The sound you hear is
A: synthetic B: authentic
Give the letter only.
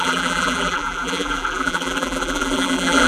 A